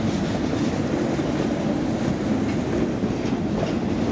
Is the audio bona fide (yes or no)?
yes